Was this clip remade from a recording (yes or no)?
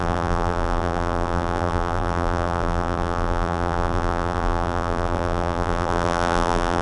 yes